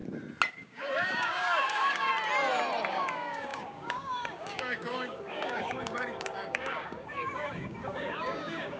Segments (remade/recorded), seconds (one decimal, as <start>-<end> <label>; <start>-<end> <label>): 0.0-0.5 recorded; 0.5-2.1 remade; 2.1-2.9 recorded; 2.9-8.8 remade